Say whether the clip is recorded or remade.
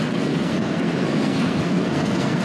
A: remade